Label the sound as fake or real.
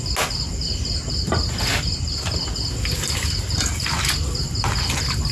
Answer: real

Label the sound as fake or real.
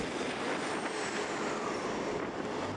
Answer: real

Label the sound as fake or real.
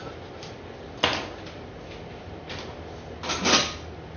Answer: real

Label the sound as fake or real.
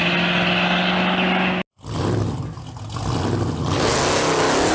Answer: real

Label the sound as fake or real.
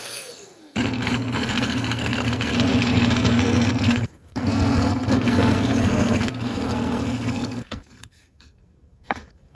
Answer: fake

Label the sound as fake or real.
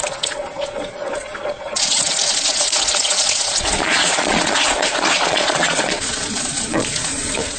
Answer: fake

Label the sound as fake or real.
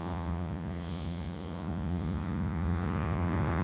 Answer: fake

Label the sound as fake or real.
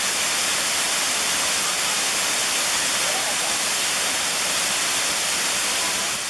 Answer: real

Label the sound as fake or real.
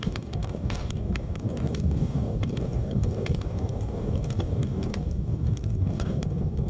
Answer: fake